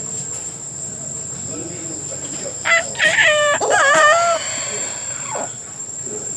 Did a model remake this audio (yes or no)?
yes